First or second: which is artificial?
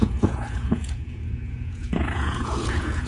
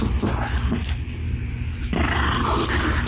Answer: first